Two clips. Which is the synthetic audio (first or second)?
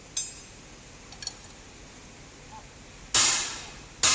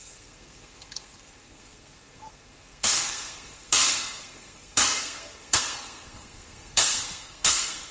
second